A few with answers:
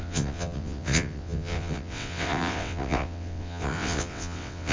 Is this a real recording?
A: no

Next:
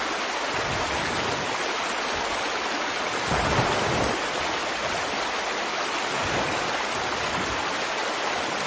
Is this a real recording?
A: yes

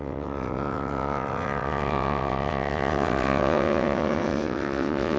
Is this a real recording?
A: no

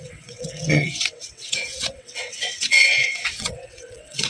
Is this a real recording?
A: no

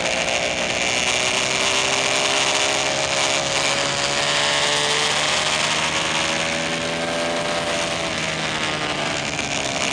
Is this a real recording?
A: yes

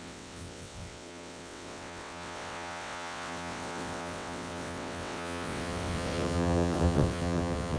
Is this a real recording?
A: no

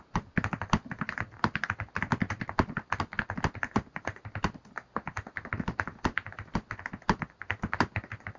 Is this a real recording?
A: yes